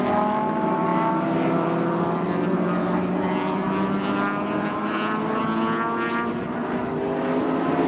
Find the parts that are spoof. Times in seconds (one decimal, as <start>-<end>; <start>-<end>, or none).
none